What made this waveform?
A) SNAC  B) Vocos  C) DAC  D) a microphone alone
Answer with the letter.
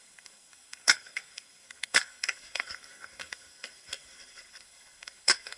A